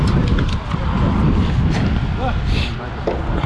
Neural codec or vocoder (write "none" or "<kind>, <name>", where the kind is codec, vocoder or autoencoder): none